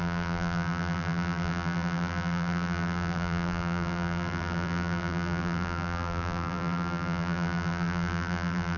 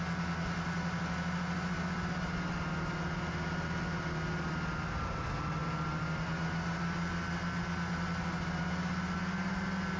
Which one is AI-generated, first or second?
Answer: first